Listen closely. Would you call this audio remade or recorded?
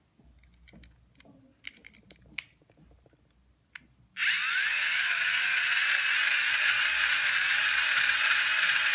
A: recorded